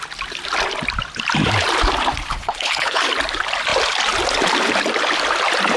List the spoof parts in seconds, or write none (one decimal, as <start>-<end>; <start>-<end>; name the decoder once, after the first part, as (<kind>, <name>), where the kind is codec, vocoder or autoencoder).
2.3-3.0 (codec, HILCodec)